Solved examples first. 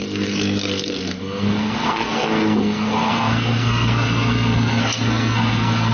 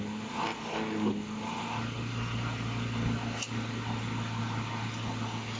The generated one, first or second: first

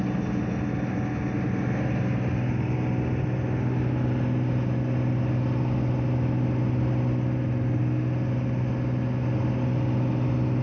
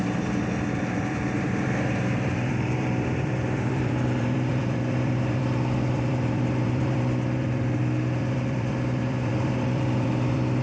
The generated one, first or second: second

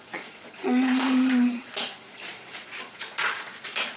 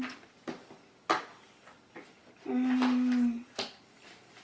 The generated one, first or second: first